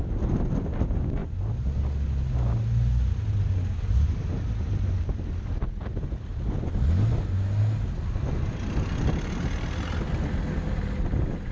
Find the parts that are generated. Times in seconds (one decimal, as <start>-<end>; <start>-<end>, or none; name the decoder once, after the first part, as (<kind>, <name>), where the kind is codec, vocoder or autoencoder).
none